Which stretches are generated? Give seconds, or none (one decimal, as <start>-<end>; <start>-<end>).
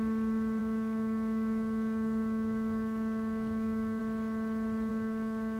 0.6-4.0; 4.9-5.6